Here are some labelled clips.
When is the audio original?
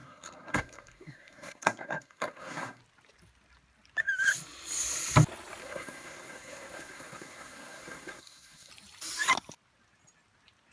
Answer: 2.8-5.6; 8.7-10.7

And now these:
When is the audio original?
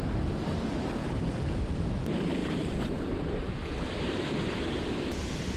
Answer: 0.0-1.0; 1.8-5.6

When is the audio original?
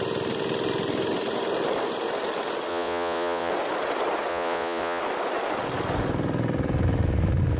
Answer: 0.0-2.7; 3.5-4.3; 5.0-7.6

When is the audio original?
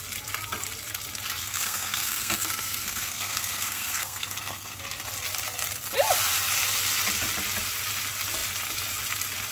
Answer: 0.0-1.4; 4.8-9.5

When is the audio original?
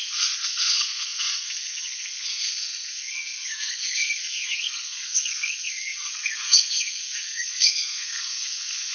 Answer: none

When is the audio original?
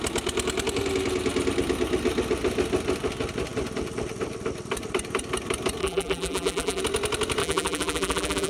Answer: 0.0-5.8; 6.8-7.4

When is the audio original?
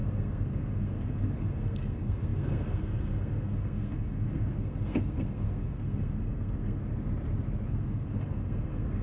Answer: 6.8-7.7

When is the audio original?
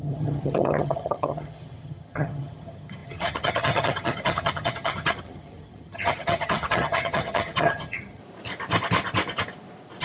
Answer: 8.2-10.0